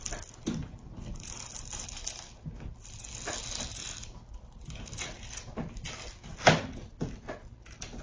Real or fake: real